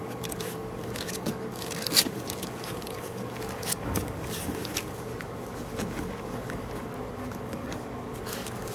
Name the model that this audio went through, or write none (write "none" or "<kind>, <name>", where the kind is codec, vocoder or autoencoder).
codec, DAC